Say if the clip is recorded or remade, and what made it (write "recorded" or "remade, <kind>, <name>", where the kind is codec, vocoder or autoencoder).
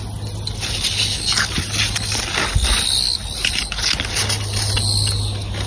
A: recorded